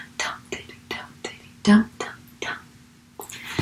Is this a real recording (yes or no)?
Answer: yes